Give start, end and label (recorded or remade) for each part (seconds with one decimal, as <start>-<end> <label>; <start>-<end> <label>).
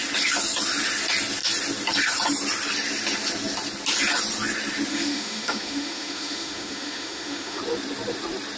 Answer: 0.0-4.9 recorded; 4.9-7.6 remade; 7.6-8.6 recorded